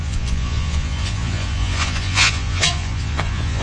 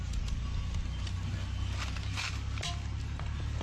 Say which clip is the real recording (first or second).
second